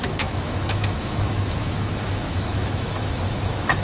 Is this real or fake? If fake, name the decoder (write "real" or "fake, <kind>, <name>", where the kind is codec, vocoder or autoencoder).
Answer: fake, autoencoder, DAC-VAE